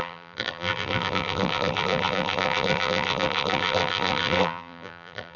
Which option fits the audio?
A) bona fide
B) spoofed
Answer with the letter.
B